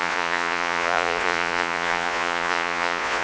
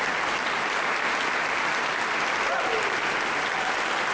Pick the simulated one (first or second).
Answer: first